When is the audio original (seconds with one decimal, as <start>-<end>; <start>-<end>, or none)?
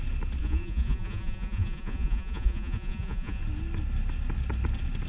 0.0-0.4; 3.4-5.1